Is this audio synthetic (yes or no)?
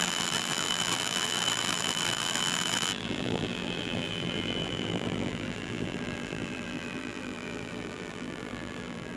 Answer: yes